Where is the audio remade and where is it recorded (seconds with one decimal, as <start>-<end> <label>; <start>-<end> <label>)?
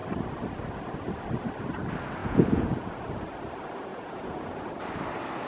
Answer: 0.0-2.2 recorded; 2.2-2.9 remade; 2.9-3.9 recorded; 3.9-4.7 remade; 4.7-5.5 recorded